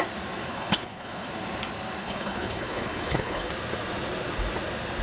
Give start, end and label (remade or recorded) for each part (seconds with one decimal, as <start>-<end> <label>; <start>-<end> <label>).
0.0-0.5 recorded; 0.5-1.3 remade; 1.3-2.0 recorded; 2.0-3.5 remade; 3.5-5.0 recorded